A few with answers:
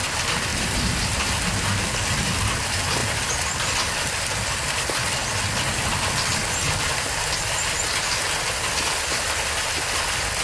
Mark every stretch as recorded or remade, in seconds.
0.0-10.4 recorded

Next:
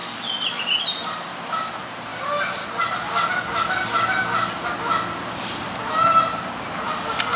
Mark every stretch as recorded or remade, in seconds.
0.0-7.4 recorded